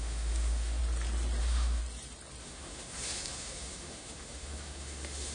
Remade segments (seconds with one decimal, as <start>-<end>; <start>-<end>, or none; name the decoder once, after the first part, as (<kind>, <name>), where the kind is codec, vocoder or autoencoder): 0.0-0.8 (autoencoder, DAC-VAE); 1.4-1.8; 2.4-5.3